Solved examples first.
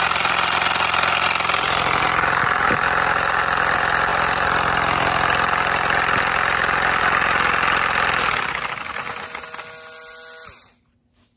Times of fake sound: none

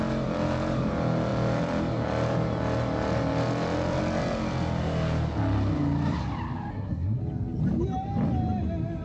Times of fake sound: 6.7-7.2 (codec, SNAC)

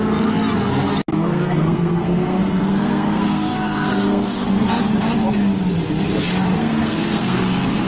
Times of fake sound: 1.1-4.8 (codec, SNAC); 6.5-7.9

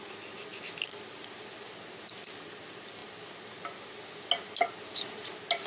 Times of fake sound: none

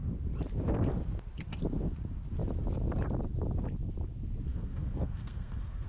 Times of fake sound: 4.5-5.9 (codec, SNAC)